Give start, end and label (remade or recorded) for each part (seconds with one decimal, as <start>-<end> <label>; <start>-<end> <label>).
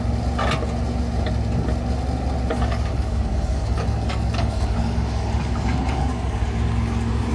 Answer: 0.0-2.5 recorded; 2.5-7.3 remade